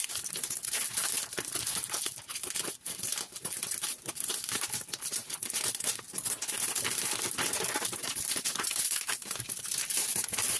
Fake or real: real